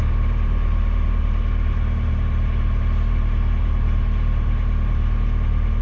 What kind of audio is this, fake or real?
fake